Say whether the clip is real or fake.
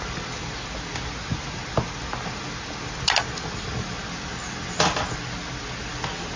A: real